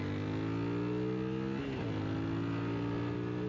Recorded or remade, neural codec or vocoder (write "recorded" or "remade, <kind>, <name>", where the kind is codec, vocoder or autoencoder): recorded